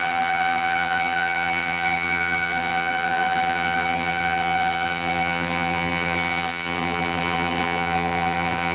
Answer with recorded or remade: remade